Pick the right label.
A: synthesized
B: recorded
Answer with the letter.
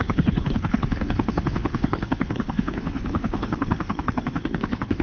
A